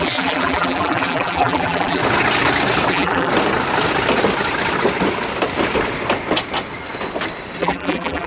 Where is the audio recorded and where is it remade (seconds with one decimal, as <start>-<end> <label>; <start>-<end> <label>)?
0.0-2.0 remade; 2.0-2.9 recorded; 2.9-3.3 remade; 3.3-7.6 recorded; 7.6-8.3 remade